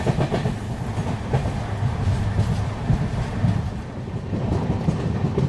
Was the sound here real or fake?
real